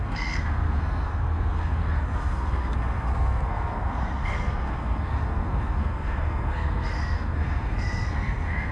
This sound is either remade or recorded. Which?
remade